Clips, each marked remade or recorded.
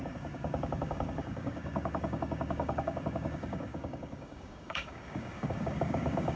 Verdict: remade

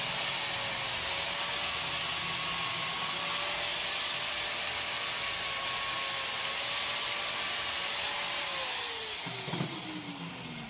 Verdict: recorded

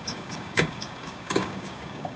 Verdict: remade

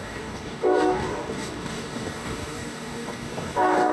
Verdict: remade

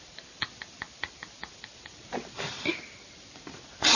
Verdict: recorded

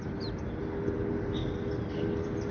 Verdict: recorded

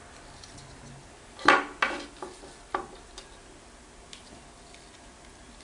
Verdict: recorded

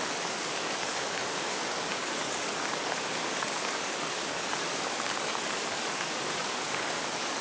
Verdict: remade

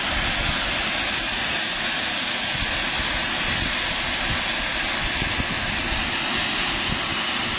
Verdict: recorded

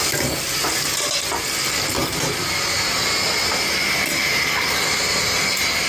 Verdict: recorded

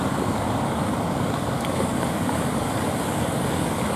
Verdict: remade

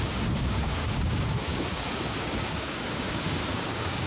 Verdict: remade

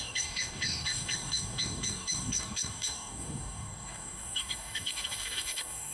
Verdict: remade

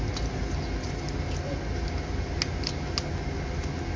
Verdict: recorded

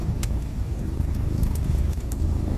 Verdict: remade